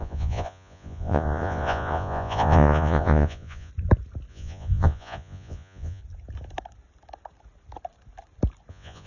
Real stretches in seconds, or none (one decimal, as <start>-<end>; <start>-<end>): 3.7-4.3; 6.0-8.7